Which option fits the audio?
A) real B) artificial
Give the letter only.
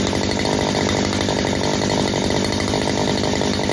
A